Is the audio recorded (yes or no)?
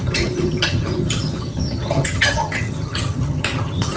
no